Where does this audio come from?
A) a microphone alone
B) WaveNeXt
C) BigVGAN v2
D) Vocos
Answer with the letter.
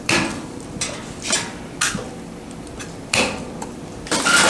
C